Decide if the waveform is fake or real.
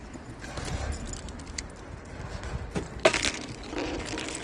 real